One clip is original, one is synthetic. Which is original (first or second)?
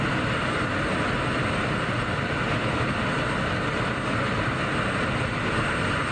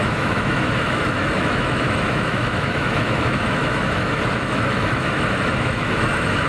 first